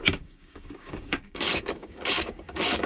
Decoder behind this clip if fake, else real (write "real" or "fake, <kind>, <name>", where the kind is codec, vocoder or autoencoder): fake, codec, DAC